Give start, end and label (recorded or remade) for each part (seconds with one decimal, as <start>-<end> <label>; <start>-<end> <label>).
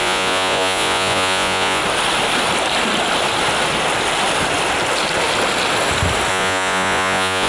0.0-1.8 remade; 1.8-6.3 recorded; 6.3-7.5 remade